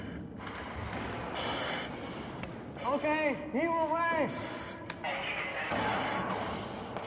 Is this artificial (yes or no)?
no